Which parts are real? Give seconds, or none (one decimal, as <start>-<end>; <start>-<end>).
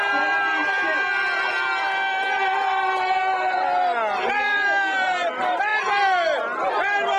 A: 0.0-7.2